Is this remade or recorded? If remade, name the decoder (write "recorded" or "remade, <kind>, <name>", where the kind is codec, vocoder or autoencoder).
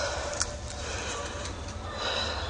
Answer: recorded